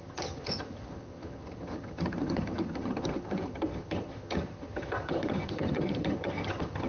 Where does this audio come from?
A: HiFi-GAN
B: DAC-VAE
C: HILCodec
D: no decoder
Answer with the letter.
A